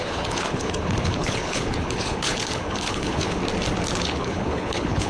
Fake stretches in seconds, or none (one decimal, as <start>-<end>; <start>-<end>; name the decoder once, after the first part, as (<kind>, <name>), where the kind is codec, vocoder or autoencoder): 0.0-3.4 (codec, HILCodec); 4.0-5.1